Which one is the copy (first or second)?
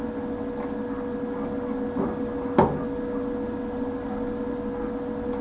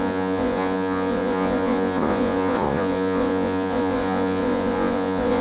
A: second